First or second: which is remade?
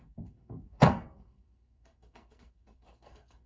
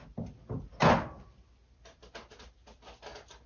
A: first